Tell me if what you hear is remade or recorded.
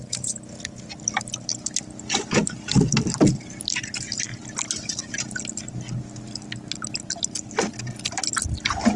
recorded